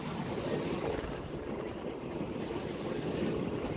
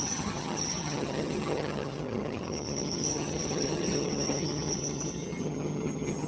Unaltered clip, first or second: first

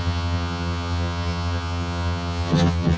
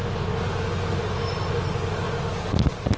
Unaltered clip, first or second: second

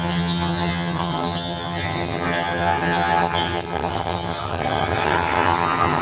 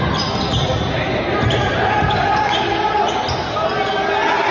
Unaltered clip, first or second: second